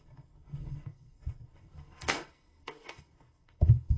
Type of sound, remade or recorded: remade